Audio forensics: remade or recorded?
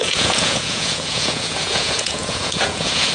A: remade